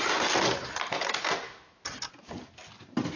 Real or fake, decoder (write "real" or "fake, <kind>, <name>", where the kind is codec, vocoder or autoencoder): real